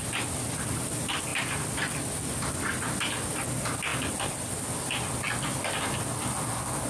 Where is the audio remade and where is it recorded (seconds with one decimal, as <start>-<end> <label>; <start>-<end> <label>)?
0.0-6.9 recorded